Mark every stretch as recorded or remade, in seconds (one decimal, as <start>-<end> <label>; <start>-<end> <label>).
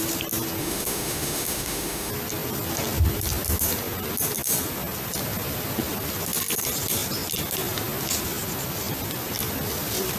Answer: 0.0-0.6 recorded; 0.6-2.1 remade; 2.1-10.2 recorded